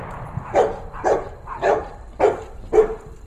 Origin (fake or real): fake